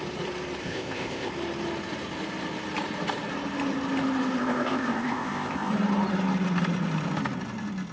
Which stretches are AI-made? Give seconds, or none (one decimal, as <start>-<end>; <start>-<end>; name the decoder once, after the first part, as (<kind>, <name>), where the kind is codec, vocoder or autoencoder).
0.6-1.3 (codec, ZipCodec); 4.4-5.7